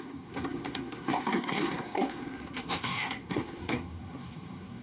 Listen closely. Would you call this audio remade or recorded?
remade